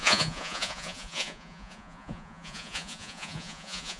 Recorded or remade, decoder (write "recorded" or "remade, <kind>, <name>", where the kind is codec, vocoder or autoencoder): remade, vocoder, Vocos